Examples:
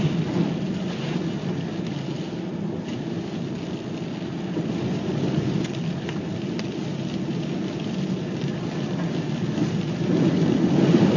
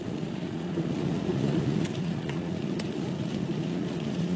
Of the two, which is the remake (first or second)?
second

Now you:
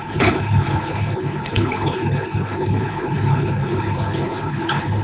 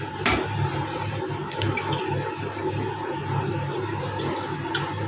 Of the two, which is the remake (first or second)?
first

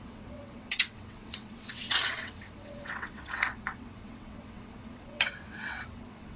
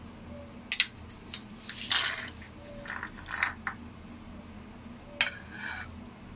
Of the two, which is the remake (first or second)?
first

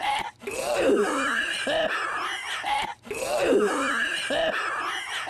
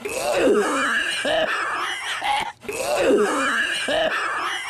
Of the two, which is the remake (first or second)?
first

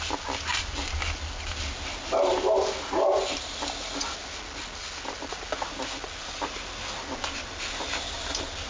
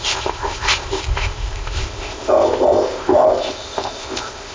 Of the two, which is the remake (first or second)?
second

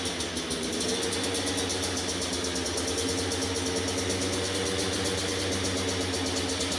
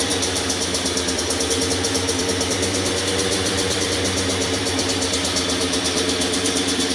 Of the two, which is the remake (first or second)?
second